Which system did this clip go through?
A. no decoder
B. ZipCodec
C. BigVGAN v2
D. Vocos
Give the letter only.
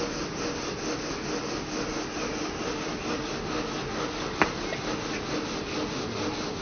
A